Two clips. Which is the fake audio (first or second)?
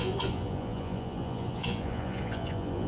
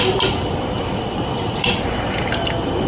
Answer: first